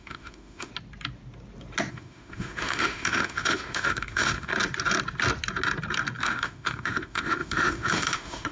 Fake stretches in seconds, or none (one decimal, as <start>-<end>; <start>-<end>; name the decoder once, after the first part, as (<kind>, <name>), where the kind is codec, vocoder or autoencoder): 0.0-0.7 (autoencoder, DAC-VAE); 1.9-4.5; 6.2-8.5